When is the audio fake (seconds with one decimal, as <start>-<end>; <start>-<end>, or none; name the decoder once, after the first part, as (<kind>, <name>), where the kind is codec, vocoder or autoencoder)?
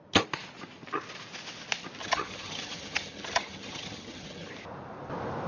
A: 2.0-4.5 (vocoder, HiFi-GAN)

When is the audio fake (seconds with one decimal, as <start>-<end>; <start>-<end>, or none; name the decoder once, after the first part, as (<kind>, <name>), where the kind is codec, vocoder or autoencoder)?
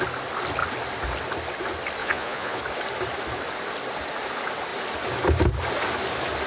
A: 2.0-2.6 (vocoder, Vocos)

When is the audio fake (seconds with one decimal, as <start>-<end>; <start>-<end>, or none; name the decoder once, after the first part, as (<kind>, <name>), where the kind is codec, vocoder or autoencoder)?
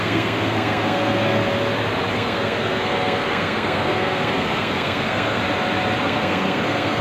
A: 0.0-1.4 (codec, SNAC); 2.1-5.4; 6.0-7.0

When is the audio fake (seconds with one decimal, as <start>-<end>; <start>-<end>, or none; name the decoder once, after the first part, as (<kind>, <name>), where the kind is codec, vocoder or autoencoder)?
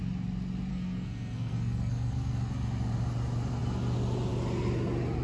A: 0.7-2.5 (codec, SNAC)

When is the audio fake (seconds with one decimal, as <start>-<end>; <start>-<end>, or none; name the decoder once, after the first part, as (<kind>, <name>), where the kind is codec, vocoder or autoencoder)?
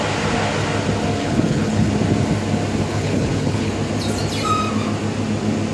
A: 1.2-1.9 (codec, HILCodec); 2.9-3.7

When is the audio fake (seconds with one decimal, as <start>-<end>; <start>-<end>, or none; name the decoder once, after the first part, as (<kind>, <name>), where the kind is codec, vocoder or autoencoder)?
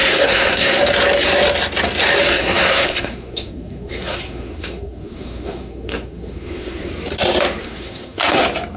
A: 0.0-0.8 (codec, SNAC); 2.3-6.9; 7.6-8.4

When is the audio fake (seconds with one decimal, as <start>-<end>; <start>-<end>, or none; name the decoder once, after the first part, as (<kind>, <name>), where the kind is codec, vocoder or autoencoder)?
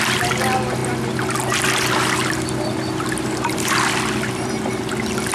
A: none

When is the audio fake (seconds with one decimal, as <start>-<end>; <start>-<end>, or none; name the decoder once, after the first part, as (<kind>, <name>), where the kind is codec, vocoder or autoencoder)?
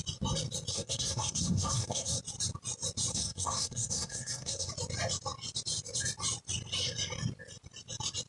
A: 0.7-2.2 (codec, SNAC); 3.1-4.7